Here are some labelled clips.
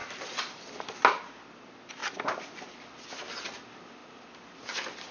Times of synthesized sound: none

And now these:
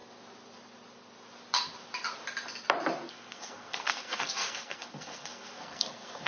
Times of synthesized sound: 3.1-6.3

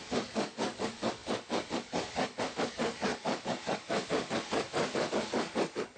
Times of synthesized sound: 0.0-6.0